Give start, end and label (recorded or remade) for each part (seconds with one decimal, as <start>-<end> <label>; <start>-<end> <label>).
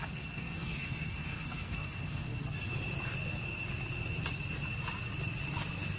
0.0-2.3 remade; 2.3-6.0 recorded